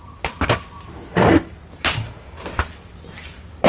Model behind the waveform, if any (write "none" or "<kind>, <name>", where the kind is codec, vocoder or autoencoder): none